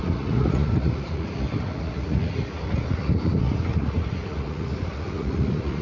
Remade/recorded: remade